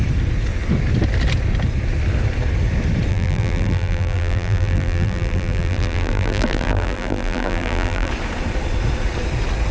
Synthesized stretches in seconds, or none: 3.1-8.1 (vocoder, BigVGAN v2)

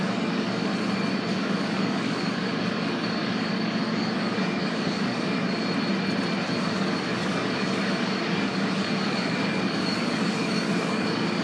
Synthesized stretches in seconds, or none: 0.0-0.7 (codec, DAC); 1.3-5.6; 6.6-11.4

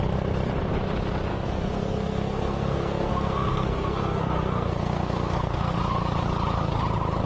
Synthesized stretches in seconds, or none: 1.3-5.7 (codec, SNAC)

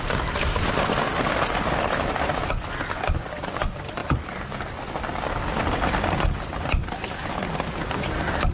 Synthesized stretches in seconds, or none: none